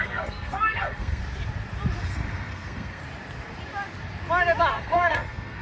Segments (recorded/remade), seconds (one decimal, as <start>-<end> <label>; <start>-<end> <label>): 0.0-1.2 remade; 1.2-2.0 recorded; 2.0-3.0 remade; 3.0-4.7 recorded; 4.7-5.6 remade